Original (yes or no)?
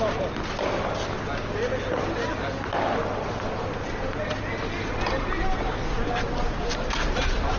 yes